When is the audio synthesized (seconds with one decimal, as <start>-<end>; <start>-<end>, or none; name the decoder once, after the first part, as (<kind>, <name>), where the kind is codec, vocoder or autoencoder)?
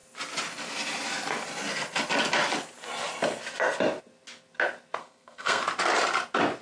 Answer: 5.0-5.6 (codec, SNAC)